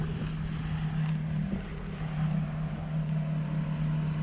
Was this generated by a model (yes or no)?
no